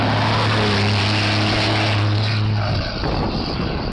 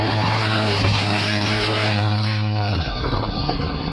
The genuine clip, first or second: first